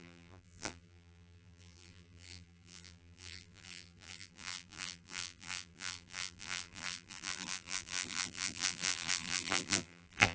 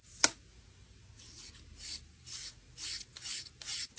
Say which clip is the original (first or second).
second